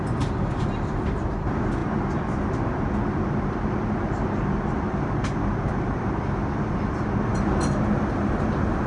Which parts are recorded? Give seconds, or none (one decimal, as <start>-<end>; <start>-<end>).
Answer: 0.0-8.9

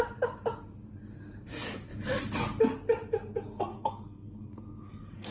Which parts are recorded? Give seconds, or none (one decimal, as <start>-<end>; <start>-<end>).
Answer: 0.0-3.7

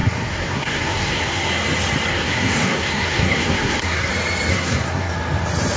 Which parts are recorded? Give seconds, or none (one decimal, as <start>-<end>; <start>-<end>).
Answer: 1.5-2.1; 4.1-4.5; 5.1-5.8

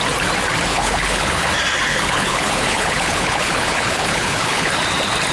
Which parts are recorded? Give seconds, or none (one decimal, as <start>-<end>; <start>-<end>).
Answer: 0.0-0.7; 1.5-1.9; 4.7-5.3